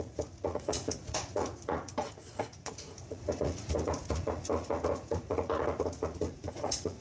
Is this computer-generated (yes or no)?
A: yes